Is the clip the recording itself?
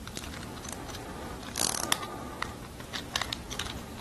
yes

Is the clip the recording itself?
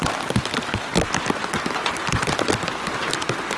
yes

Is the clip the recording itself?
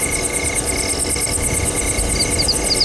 yes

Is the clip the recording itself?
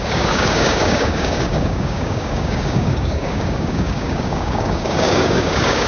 no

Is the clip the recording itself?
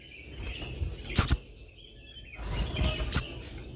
yes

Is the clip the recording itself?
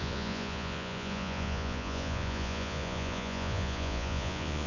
no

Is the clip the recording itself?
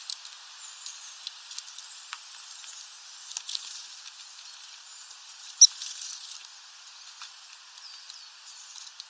yes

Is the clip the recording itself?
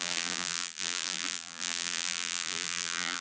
no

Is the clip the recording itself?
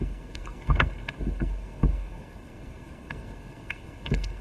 no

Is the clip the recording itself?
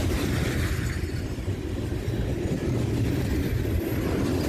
yes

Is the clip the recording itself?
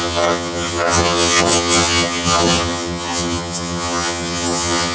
no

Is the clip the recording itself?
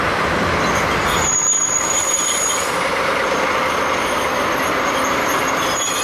yes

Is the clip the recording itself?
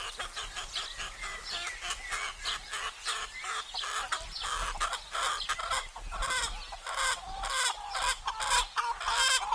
yes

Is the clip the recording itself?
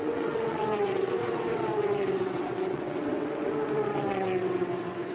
no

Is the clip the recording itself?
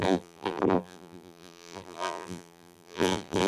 no